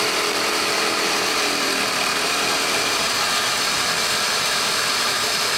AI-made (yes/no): yes